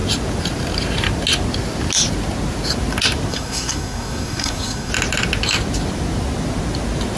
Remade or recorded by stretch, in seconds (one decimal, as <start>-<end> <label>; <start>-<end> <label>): 0.0-3.3 recorded; 3.3-4.9 remade; 4.9-7.2 recorded